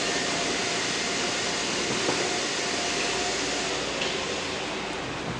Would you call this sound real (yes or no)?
yes